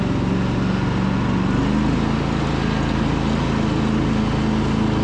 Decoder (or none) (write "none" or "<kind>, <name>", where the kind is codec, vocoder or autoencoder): none